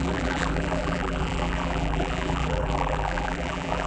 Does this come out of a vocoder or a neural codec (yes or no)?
yes